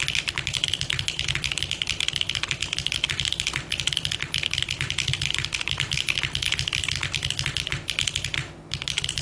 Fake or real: real